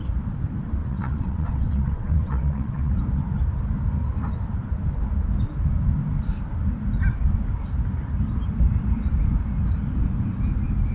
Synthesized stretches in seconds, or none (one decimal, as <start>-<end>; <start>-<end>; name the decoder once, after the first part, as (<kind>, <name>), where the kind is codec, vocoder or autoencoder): 0.8-2.9 (vocoder, WaveNeXt)

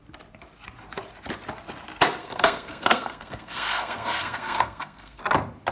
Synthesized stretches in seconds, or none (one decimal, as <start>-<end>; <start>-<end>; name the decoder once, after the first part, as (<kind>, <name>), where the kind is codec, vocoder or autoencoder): 2.2-5.2 (codec, SNAC)

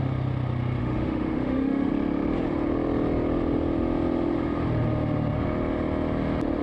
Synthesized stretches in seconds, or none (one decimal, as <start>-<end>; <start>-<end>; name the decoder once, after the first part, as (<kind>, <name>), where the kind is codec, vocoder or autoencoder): 0.8-1.9 (autoencoder, DAC-VAE)

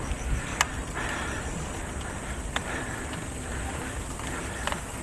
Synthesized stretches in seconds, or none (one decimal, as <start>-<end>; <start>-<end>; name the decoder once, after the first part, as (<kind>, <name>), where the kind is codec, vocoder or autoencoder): none

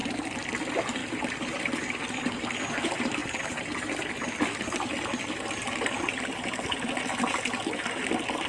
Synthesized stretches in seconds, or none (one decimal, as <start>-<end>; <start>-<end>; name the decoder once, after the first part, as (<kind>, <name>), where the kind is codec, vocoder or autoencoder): 1.0-2.0 (vocoder, BigVGAN v2)